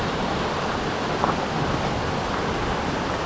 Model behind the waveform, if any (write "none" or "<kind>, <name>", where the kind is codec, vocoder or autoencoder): none